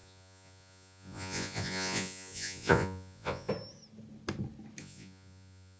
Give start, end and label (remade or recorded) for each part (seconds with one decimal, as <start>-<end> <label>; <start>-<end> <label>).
0.0-3.5 remade; 3.5-4.8 recorded; 4.8-5.8 remade